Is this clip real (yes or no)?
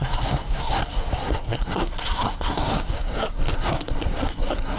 no